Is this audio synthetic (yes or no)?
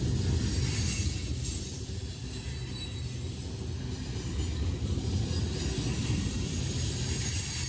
no